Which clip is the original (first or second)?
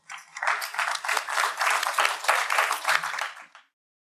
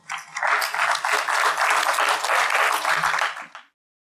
second